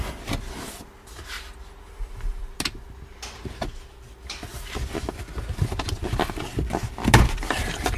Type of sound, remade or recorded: recorded